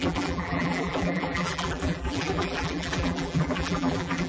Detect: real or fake fake